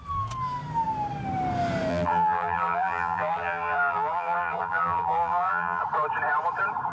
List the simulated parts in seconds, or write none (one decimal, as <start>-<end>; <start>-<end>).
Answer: 1.9-5.8